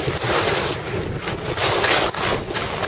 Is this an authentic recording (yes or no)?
yes